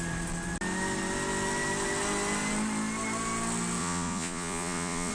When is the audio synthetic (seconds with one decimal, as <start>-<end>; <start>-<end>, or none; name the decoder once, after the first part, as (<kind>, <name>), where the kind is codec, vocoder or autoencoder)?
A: 3.8-5.1 (vocoder, Vocos)